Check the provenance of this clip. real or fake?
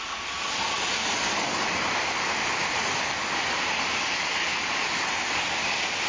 fake